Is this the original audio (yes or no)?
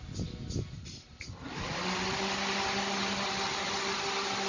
yes